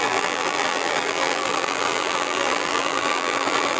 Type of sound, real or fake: fake